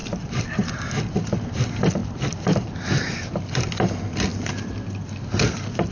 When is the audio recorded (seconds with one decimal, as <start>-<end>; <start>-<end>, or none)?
0.7-2.0; 3.1-5.9